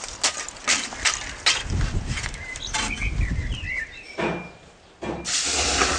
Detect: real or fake real